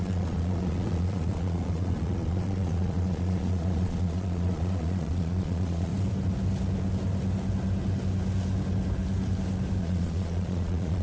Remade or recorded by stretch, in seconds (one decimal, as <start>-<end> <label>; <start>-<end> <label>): 0.0-5.9 remade; 5.9-9.8 recorded; 9.8-11.0 remade